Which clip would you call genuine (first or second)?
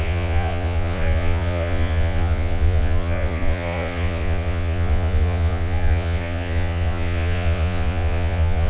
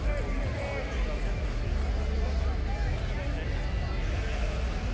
second